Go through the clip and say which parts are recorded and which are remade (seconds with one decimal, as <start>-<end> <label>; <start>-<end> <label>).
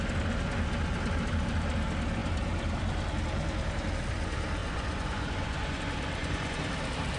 0.0-4.6 recorded; 4.6-5.8 remade; 5.8-6.2 recorded; 6.2-6.7 remade; 6.7-7.2 recorded